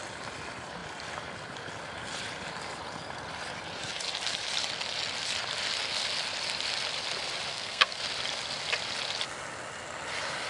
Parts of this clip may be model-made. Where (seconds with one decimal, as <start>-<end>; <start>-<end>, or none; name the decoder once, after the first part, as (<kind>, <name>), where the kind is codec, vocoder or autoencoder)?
7.5-8.0 (codec, SNAC)